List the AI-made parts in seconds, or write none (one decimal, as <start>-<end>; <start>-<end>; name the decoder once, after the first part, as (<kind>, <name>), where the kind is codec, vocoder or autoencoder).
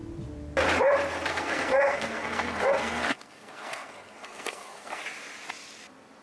1.3-5.0 (codec, SNAC)